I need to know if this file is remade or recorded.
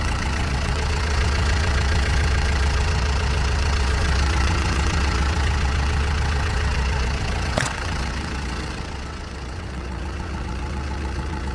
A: remade